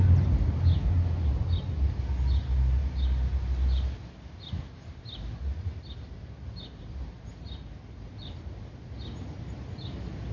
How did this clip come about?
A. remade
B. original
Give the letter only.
B